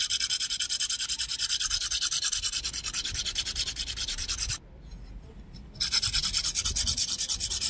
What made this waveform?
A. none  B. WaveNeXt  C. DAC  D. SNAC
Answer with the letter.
A